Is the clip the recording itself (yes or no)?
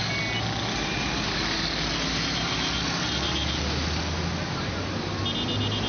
yes